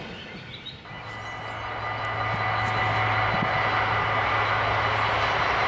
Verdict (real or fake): real